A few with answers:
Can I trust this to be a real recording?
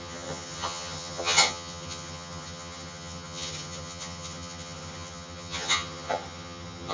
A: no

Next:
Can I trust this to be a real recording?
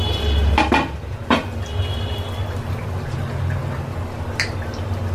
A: yes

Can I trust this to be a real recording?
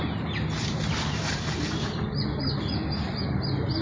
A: yes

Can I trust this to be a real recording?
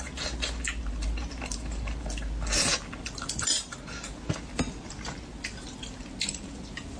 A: yes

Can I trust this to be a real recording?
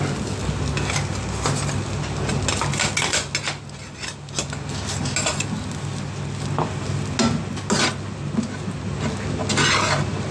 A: yes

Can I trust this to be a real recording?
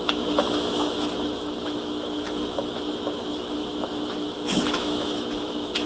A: no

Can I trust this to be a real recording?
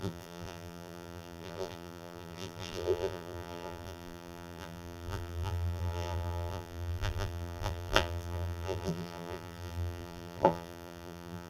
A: no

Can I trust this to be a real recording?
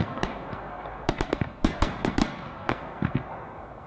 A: no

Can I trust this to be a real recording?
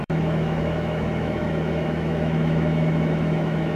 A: no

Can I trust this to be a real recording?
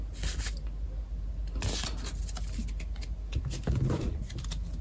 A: yes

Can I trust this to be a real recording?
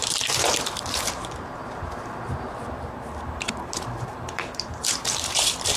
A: no